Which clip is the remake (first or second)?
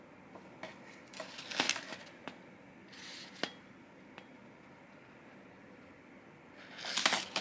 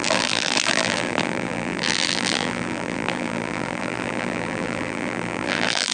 second